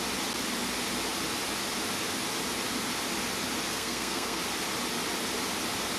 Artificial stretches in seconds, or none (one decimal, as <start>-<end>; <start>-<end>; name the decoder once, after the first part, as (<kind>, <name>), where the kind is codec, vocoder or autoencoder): 3.7-4.4 (codec, SNAC)

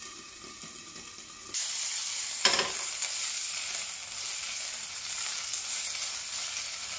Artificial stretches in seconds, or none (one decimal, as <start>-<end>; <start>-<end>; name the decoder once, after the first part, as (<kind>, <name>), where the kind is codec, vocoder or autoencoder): none

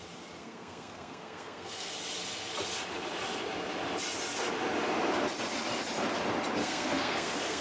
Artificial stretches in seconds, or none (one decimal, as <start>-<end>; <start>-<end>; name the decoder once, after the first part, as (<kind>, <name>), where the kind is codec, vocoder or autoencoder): 0.4-1.9 (codec, SNAC); 6.6-7.6

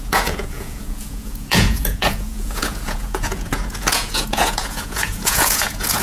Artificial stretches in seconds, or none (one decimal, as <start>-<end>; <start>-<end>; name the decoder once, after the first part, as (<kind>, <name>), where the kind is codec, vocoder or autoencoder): 0.0-6.0 (vocoder, Vocos)